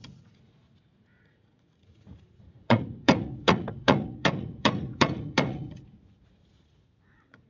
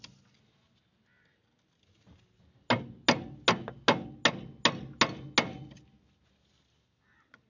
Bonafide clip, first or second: second